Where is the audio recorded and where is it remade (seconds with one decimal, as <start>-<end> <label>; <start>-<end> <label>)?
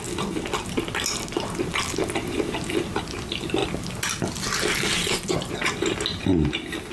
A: 0.0-6.9 recorded